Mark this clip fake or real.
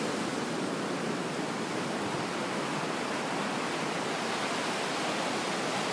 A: real